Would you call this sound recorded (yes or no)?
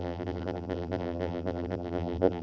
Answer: no